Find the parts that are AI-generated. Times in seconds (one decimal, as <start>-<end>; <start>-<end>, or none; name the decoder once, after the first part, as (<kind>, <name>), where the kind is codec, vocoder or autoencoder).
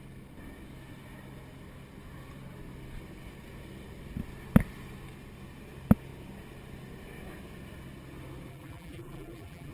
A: 8.5-9.7 (vocoder, BigVGAN v2)